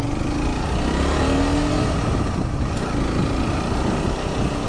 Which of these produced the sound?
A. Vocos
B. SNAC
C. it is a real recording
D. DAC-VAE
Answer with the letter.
C